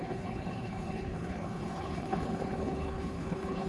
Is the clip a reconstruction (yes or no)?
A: yes